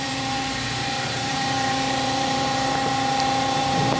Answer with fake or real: fake